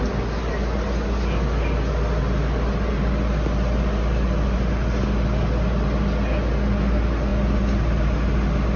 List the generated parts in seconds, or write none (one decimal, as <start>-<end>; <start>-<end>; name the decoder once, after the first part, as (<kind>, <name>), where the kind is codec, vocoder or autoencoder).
none